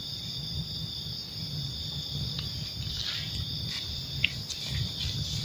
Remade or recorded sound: recorded